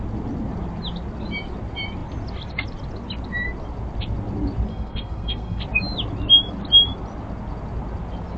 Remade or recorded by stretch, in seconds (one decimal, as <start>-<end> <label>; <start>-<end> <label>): 0.0-4.7 recorded; 4.7-5.6 remade; 5.6-8.4 recorded